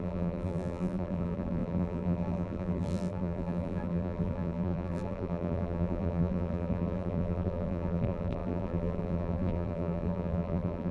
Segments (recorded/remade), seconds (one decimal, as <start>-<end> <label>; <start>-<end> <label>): 0.0-10.9 remade